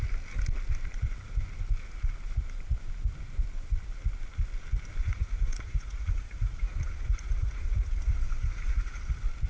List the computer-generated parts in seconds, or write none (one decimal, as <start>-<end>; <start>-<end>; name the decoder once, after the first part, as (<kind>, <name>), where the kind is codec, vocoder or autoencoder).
5.0-9.1 (vocoder, Vocos)